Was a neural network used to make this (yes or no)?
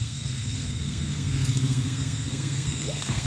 yes